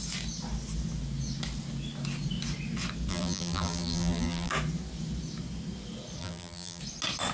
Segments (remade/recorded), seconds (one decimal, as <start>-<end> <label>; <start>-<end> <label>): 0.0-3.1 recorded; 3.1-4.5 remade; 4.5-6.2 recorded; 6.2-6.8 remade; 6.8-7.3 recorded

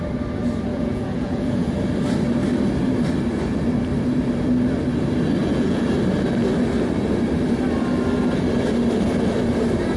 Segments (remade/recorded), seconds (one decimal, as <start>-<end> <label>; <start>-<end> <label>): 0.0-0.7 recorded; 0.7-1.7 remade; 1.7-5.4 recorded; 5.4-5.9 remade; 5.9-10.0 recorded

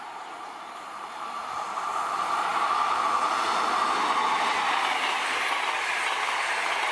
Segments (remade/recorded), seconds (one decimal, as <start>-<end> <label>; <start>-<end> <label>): 0.0-2.5 remade; 2.5-6.9 recorded

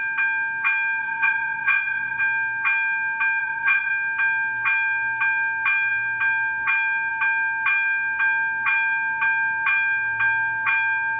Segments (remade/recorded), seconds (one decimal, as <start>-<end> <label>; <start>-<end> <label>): 0.0-1.0 recorded; 1.0-2.2 remade; 2.2-3.4 recorded; 3.4-3.9 remade; 3.9-11.2 recorded

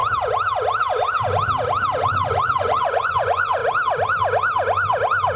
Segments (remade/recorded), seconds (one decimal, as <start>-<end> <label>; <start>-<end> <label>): 0.0-2.0 recorded; 2.0-3.6 remade; 3.6-5.4 recorded